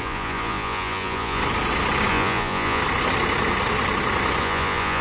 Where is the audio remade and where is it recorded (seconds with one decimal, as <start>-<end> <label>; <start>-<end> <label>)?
0.0-1.4 remade; 1.4-2.1 recorded; 2.1-2.8 remade; 2.8-4.4 recorded; 4.4-5.0 remade